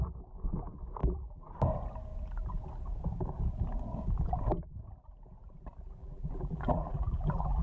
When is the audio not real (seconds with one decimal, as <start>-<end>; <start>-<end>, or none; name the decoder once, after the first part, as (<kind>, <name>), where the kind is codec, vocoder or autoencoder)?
1.0-1.5 (vocoder, BigVGAN v2); 6.0-7.6